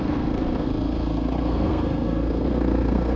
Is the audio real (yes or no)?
no